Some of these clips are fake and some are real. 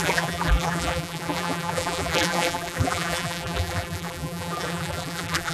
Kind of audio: fake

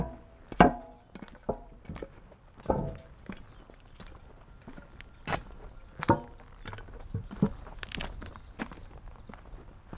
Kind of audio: real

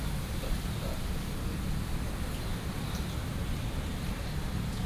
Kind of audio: real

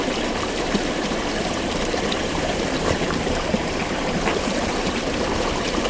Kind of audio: fake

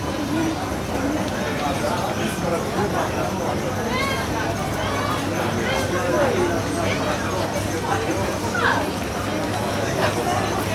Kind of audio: real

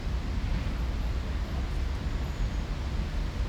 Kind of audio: real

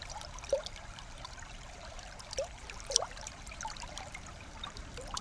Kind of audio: fake